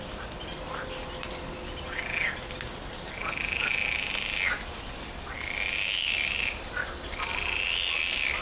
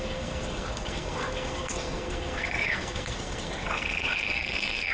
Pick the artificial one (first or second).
second